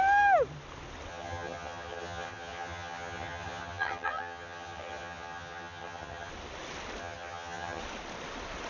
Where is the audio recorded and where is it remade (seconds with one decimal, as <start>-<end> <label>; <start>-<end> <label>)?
0.0-1.1 recorded; 1.1-6.3 remade; 6.3-7.0 recorded; 7.0-7.8 remade; 7.8-8.7 recorded